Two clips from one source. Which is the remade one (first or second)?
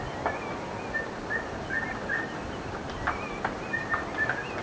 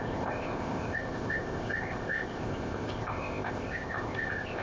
second